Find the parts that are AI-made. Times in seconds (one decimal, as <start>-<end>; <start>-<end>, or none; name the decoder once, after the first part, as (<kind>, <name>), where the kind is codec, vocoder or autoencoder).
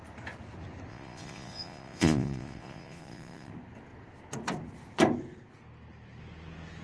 0.9-3.5 (vocoder, Vocos)